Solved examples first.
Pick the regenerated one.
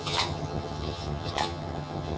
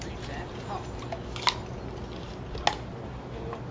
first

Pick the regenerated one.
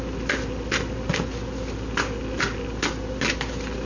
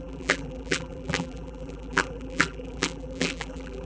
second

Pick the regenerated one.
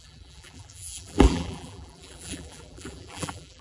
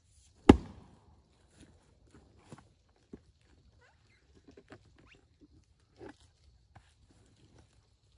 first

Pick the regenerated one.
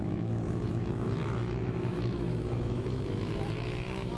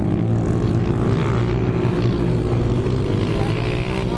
first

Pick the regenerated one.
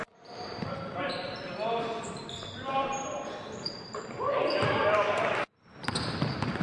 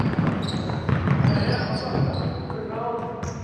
first